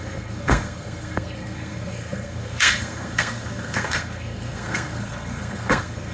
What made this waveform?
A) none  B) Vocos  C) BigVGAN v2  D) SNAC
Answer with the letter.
D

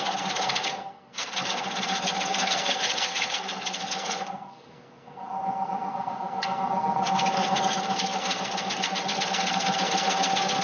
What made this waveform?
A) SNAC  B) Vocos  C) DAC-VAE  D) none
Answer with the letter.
A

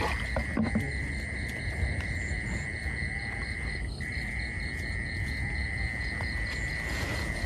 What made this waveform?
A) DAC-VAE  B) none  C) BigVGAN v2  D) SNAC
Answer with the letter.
B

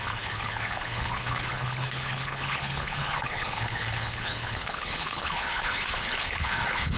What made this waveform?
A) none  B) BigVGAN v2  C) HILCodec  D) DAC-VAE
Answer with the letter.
C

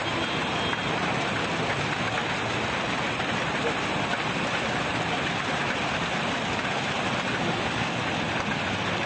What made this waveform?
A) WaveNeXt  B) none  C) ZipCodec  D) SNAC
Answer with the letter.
B